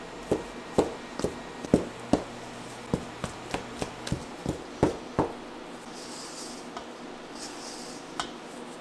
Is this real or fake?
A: real